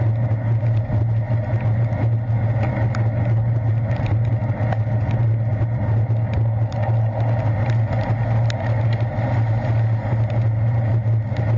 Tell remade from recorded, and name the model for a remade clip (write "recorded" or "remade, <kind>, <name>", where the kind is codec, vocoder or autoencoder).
recorded